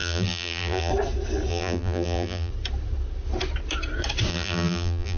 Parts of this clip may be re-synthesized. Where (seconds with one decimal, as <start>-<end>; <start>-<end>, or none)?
0.0-0.9; 1.5-2.5; 4.3-5.2